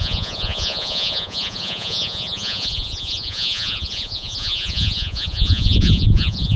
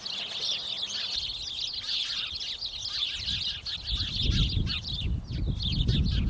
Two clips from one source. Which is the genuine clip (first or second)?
second